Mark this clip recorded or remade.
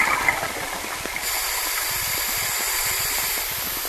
remade